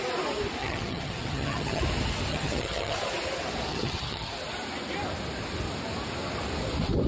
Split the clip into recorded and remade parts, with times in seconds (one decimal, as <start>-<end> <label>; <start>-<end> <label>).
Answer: 0.0-0.6 recorded; 0.6-1.8 remade; 1.8-2.3 recorded; 2.3-3.0 remade; 3.0-3.7 recorded; 3.7-4.3 remade; 4.3-7.1 recorded